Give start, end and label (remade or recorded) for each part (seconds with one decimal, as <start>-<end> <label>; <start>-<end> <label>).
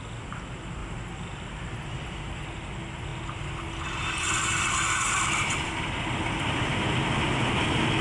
0.0-8.0 recorded